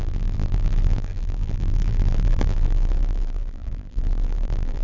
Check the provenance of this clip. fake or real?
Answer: fake